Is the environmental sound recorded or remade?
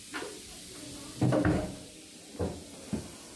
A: recorded